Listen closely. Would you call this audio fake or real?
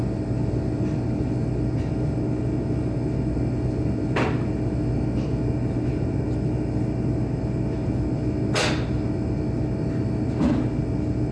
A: real